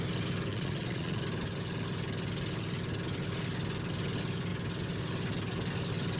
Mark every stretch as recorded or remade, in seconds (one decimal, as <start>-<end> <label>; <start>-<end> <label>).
0.0-0.5 recorded; 0.5-1.2 remade; 1.2-6.2 recorded